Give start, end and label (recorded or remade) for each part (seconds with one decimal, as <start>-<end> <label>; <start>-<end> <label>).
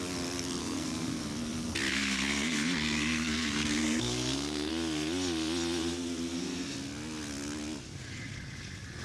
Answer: 0.0-0.6 recorded; 0.6-1.2 remade; 1.2-1.9 recorded; 1.9-4.7 remade; 4.7-9.0 recorded